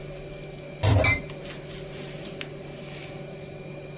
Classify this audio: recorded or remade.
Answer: recorded